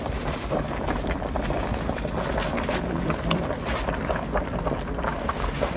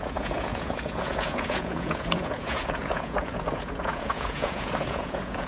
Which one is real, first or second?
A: first